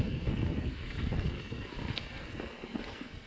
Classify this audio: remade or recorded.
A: remade